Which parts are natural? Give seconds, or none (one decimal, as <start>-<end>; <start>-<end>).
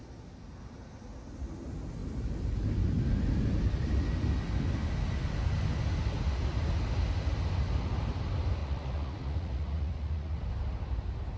0.0-8.6; 10.4-11.4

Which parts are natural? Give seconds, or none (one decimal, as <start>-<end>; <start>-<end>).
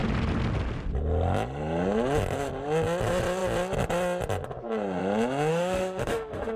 0.0-5.5